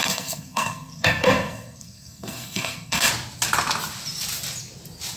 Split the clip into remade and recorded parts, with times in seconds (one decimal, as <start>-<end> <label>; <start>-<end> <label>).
0.0-3.1 remade; 3.1-5.2 recorded